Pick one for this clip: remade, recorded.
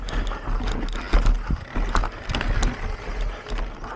recorded